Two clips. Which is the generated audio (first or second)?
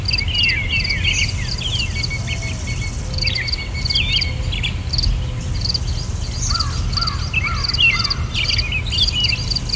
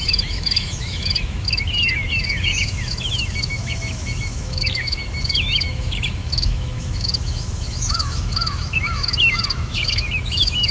second